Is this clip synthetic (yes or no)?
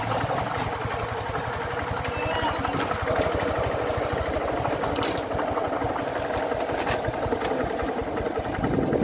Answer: no